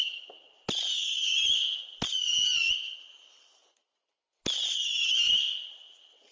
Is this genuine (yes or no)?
yes